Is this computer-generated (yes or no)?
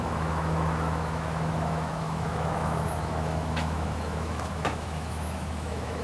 yes